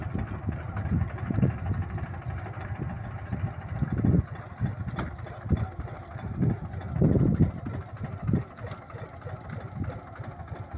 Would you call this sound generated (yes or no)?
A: no